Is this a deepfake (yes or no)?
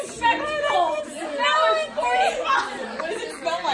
no